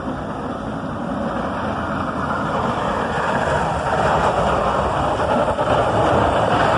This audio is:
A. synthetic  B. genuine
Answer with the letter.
B